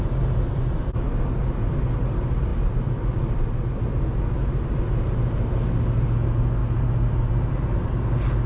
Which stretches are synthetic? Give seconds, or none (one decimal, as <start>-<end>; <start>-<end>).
none